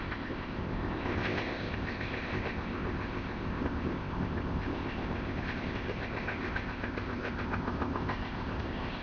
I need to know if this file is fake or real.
fake